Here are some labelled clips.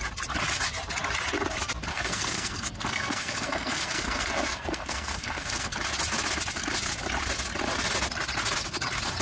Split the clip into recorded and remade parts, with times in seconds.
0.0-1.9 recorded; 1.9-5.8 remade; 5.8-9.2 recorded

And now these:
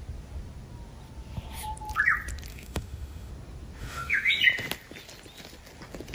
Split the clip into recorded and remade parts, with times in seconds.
0.0-2.5 recorded; 2.5-3.3 remade; 3.3-3.8 recorded; 3.8-4.3 remade; 4.3-6.1 recorded

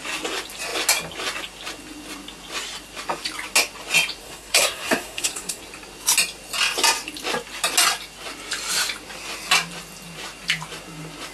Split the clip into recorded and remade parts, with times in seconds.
0.0-4.2 recorded; 4.2-5.6 remade; 5.6-11.3 recorded

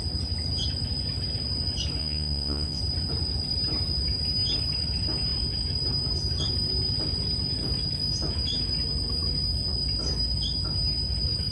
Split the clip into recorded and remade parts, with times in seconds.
0.0-2.0 recorded; 2.0-2.8 remade; 2.8-11.5 recorded

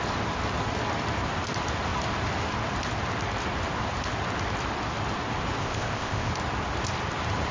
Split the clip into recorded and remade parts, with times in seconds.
0.0-5.6 recorded; 5.6-6.3 remade; 6.3-7.5 recorded